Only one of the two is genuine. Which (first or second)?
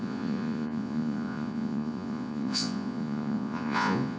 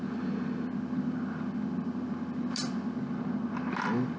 second